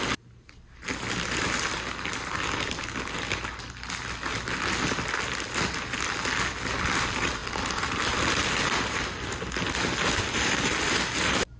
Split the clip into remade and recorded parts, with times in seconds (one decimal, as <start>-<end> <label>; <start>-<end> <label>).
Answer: 0.0-11.6 recorded